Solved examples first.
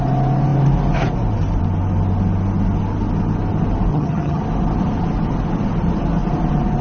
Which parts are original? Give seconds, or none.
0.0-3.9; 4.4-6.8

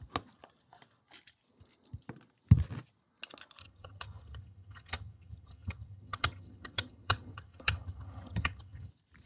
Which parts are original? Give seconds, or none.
0.0-3.6; 8.9-9.3

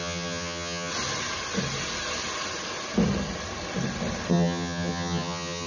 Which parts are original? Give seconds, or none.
0.9-4.3

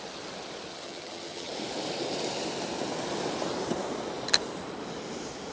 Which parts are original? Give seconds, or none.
0.0-0.7; 1.5-5.5

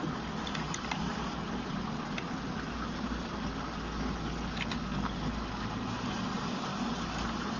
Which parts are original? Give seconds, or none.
0.0-7.6

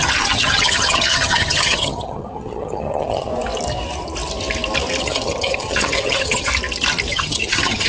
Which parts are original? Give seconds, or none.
3.3-5.0; 6.5-7.1

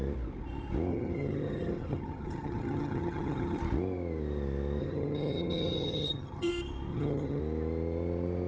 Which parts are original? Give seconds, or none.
0.0-0.9; 3.6-4.8; 6.5-6.9; 7.4-8.5